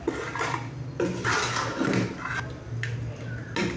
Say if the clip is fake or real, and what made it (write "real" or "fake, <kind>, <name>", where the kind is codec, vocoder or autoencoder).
real